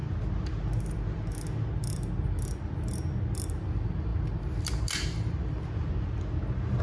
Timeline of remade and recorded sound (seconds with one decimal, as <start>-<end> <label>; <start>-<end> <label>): 0.0-6.8 recorded